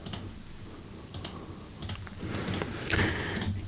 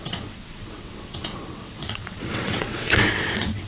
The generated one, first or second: second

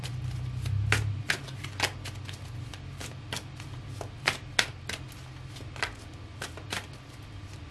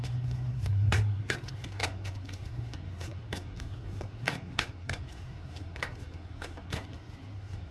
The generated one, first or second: second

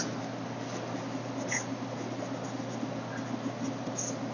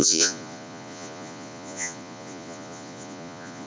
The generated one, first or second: second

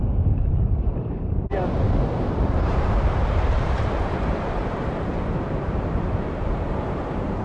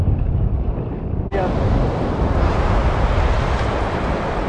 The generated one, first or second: first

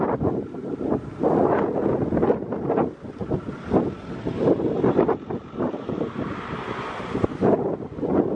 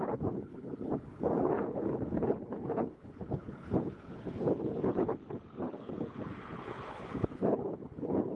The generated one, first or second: second